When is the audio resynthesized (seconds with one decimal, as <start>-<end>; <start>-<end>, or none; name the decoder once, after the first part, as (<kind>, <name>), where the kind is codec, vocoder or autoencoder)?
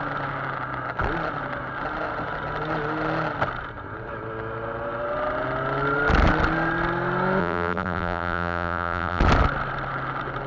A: 7.4-9.2 (vocoder, BigVGAN v2)